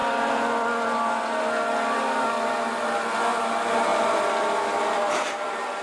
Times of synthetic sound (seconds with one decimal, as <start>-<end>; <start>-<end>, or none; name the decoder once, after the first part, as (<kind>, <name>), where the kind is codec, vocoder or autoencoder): 3.9-5.8 (vocoder, BigVGAN v2)